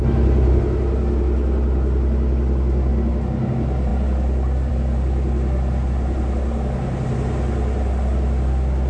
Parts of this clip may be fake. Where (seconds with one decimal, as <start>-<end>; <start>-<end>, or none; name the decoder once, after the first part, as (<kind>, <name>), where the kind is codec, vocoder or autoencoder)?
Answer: none